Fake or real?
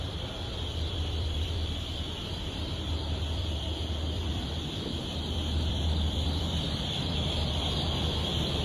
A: fake